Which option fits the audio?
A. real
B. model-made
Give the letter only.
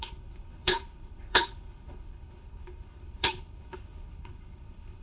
B